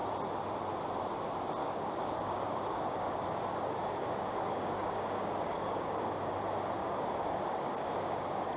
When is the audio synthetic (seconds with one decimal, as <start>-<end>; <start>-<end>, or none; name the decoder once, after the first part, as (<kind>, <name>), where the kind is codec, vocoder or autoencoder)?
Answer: 1.6-6.2 (codec, DAC); 6.8-8.6